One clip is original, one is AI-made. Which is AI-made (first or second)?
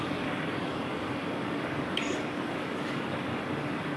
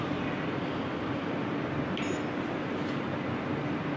first